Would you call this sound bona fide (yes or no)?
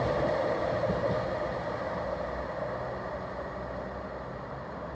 yes